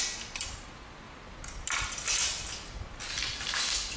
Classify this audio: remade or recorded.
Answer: recorded